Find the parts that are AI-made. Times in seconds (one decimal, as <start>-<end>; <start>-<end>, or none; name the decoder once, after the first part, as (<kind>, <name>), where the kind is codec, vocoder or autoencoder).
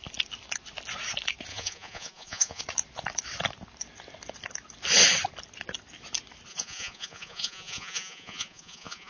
1.5-2.6 (vocoder, Vocos); 6.5-9.1